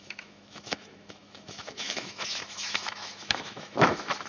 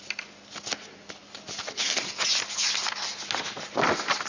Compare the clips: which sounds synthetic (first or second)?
first